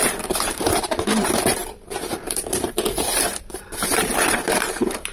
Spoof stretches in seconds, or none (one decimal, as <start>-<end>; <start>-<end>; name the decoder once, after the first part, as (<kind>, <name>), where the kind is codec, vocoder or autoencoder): 0.0-5.1 (vocoder, BigVGAN v2)